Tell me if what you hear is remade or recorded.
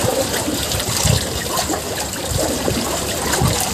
recorded